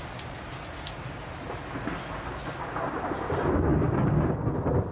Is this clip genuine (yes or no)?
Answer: yes